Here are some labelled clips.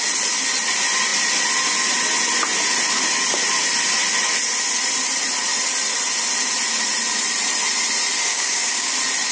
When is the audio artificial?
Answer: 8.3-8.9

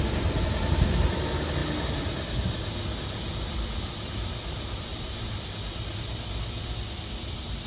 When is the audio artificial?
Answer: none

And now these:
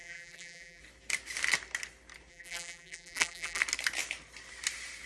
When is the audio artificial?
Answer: 0.0-0.8; 2.3-3.6